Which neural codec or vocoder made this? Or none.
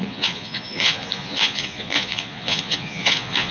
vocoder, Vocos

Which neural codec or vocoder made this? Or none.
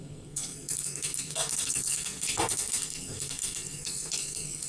codec, SNAC